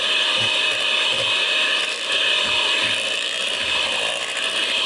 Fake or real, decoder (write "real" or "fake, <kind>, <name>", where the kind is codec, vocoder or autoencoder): real